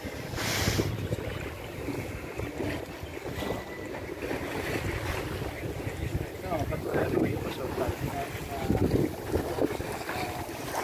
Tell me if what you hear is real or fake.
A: real